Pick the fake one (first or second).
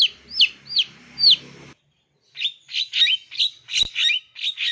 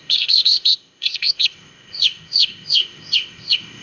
second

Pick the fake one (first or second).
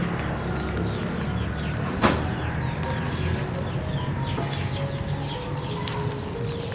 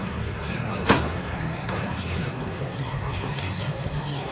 second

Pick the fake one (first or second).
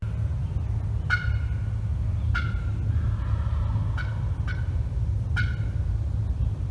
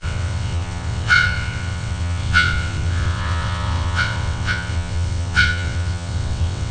second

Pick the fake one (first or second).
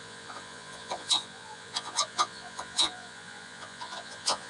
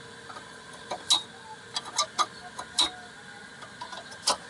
first